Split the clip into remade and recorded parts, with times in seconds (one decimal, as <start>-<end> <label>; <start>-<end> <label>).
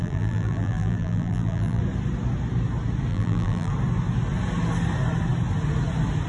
0.0-1.8 remade; 1.8-3.1 recorded; 3.1-3.7 remade; 3.7-6.3 recorded